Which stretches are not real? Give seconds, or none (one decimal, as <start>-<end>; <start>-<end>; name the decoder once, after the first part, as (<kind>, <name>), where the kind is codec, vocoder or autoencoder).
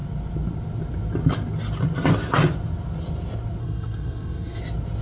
3.6-4.6 (codec, SNAC)